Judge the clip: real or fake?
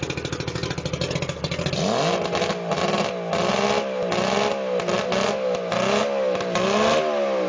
real